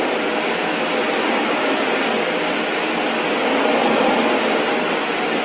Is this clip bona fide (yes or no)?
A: yes